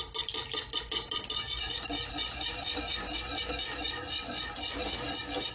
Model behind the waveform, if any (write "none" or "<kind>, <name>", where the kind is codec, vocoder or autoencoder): none